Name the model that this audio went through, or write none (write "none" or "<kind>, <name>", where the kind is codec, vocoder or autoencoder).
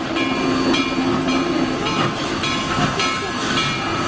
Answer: none